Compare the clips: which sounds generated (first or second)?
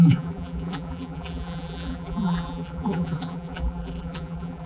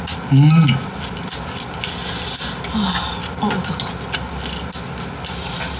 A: first